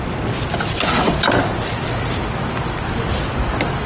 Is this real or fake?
real